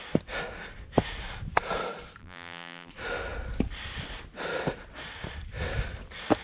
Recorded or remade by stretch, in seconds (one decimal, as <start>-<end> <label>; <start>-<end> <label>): 0.0-2.2 recorded; 2.2-2.9 remade; 2.9-6.4 recorded

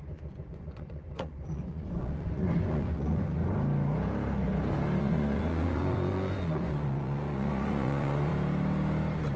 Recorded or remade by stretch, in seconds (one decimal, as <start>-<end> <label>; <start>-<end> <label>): 0.0-3.4 remade; 3.4-5.0 recorded; 5.0-8.3 remade; 8.3-9.4 recorded

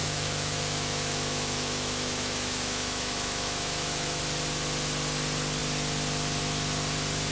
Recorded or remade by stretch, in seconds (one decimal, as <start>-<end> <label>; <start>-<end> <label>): 0.0-4.2 remade; 4.2-7.3 recorded

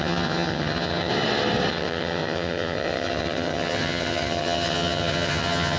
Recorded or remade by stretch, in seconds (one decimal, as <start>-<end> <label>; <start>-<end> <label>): 0.0-1.1 remade; 1.1-1.7 recorded; 1.7-5.8 remade

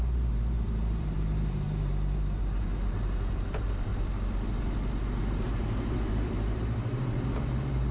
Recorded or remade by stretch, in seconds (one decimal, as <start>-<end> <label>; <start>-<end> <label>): 0.0-2.7 remade; 2.7-3.3 recorded; 3.3-3.9 remade; 3.9-5.2 recorded; 5.2-7.9 remade

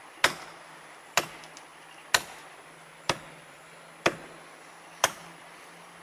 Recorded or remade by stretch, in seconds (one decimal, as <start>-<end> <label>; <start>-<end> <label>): 0.0-6.0 recorded

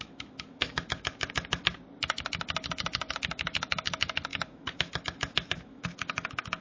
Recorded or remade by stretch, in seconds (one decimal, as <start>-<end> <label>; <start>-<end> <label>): 0.0-1.6 remade; 1.6-3.2 recorded; 3.2-6.6 remade